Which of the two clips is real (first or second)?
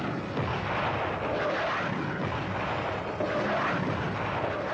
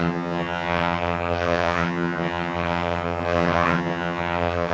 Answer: first